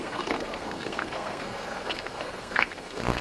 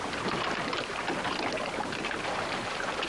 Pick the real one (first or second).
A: second